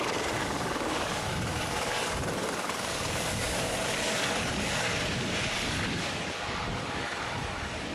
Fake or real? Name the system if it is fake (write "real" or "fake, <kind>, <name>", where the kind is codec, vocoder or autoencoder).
fake, codec, DAC